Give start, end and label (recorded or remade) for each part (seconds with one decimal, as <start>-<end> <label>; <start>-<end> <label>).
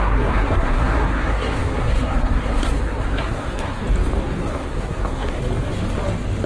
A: 0.0-3.8 remade; 3.8-4.5 recorded; 4.5-5.4 remade; 5.4-6.5 recorded